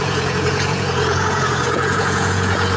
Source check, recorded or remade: remade